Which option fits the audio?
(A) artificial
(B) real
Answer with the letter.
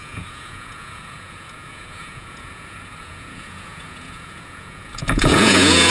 A